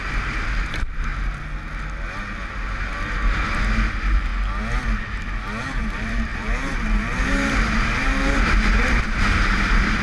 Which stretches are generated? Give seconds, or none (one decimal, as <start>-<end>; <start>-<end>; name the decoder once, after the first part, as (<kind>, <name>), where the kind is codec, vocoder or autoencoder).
0.0-1.1 (vocoder, BigVGAN v2); 3.9-4.3; 5.6-10.0